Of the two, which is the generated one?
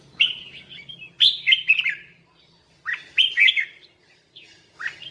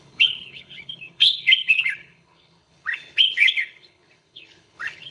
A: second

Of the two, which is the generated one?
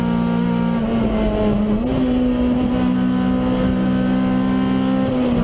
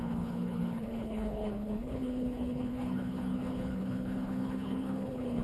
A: second